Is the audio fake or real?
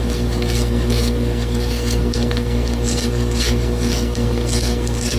fake